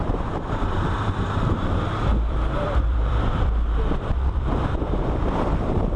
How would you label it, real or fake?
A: fake